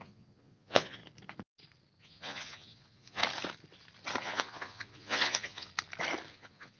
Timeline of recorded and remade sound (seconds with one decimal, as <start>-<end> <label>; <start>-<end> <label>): 0.0-1.0 remade; 1.0-2.0 recorded; 2.0-3.2 remade; 3.2-4.2 recorded; 4.2-5.7 remade; 5.7-6.3 recorded; 6.3-6.8 remade